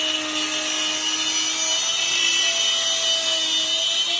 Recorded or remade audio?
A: recorded